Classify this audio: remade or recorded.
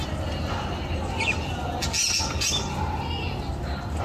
recorded